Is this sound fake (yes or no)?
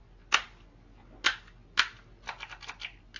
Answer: no